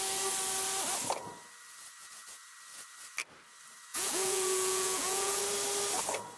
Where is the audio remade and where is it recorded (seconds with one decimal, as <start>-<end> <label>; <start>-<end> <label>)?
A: 0.0-3.9 recorded; 3.9-5.4 remade; 5.4-6.4 recorded